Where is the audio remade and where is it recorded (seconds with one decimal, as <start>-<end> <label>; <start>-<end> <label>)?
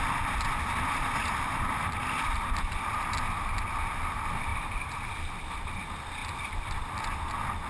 0.0-1.2 recorded; 1.2-2.2 remade; 2.2-4.5 recorded; 4.5-5.1 remade; 5.1-6.2 recorded; 6.2-7.2 remade; 7.2-7.7 recorded